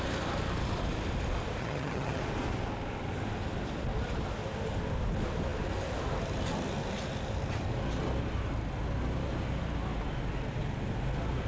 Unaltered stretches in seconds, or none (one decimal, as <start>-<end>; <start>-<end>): 0.0-1.6; 2.2-11.5